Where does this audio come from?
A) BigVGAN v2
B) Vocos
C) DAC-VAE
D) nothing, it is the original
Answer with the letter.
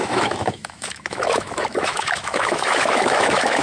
C